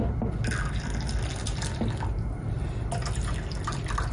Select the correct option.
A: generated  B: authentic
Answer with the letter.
B